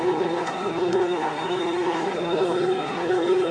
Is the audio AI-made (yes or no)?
yes